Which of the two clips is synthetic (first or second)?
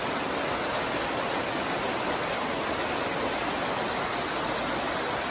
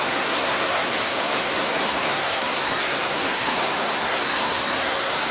second